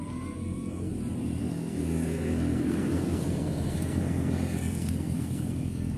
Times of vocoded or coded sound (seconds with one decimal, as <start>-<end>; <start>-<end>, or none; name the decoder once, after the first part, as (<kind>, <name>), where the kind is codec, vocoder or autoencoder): 0.0-0.9 (codec, SNAC); 1.4-6.0

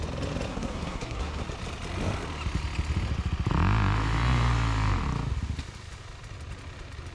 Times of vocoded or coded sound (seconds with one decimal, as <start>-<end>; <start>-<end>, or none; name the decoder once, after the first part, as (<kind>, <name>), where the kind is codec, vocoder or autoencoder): 0.5-1.4 (codec, SNAC)

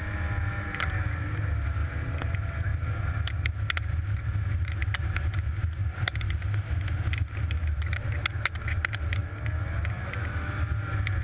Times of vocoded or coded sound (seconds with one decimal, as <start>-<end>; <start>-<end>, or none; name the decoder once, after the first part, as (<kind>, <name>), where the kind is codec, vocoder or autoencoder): 1.8-2.3 (vocoder, BigVGAN v2)

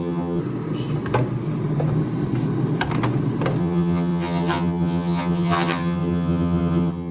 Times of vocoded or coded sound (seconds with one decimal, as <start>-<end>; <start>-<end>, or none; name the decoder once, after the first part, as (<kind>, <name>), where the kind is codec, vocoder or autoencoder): 0.0-0.4 (vocoder, HiFi-GAN); 3.6-7.1

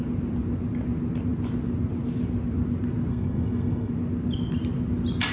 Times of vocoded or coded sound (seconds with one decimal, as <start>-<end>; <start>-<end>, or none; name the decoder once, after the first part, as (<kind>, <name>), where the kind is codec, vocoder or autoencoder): 3.1-3.9 (codec, SNAC)